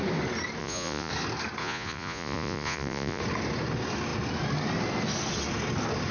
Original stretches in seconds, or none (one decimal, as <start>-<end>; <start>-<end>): 0.0-0.6; 1.1-1.6; 3.2-6.1